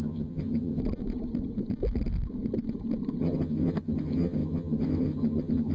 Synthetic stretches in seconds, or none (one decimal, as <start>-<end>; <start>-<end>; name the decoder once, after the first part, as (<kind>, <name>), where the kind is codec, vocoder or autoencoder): 0.0-0.8 (vocoder, HiFi-GAN); 3.2-5.7